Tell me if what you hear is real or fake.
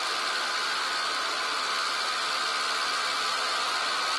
real